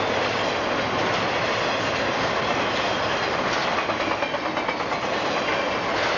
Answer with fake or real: real